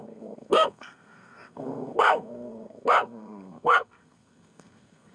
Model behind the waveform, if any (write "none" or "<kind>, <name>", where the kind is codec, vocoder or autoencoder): codec, SNAC